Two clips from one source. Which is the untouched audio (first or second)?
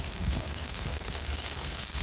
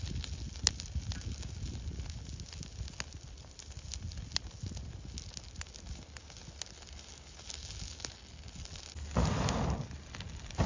second